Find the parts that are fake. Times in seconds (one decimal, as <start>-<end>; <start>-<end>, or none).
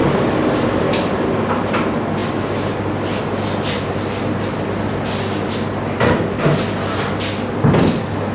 none